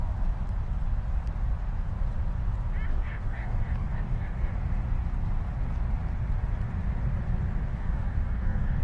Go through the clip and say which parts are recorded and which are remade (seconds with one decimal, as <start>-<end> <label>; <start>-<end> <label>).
0.0-2.9 recorded; 2.9-4.5 remade; 4.5-7.7 recorded; 7.7-8.8 remade